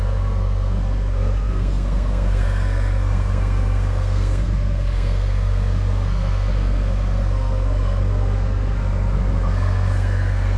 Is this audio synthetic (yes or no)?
yes